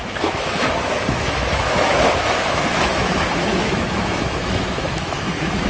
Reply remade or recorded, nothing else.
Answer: remade